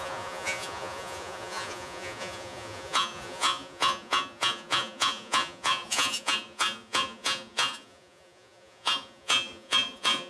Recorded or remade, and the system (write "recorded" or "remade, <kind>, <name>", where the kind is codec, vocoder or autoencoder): remade, vocoder, Vocos